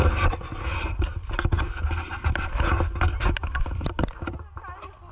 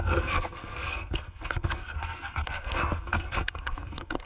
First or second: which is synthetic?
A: second